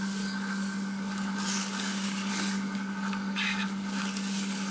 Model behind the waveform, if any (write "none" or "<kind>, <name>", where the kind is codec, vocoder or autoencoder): codec, DAC